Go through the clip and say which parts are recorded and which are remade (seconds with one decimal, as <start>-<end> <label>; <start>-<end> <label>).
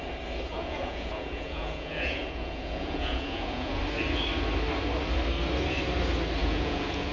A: 0.0-0.5 recorded; 0.5-3.8 remade; 3.8-6.4 recorded; 6.4-7.1 remade